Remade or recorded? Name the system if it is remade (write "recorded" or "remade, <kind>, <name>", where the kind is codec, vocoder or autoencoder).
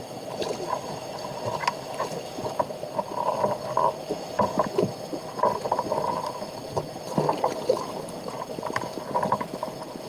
recorded